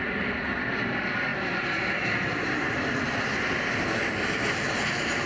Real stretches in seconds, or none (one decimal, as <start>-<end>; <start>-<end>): 0.0-5.3